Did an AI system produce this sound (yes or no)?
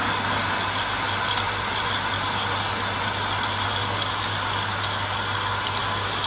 no